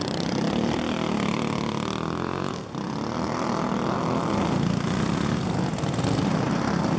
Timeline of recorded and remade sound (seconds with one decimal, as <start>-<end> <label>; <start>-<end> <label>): 0.0-4.2 remade; 4.2-7.0 recorded